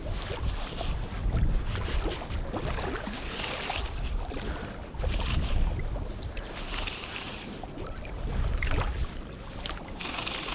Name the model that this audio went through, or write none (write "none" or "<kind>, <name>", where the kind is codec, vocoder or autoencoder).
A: none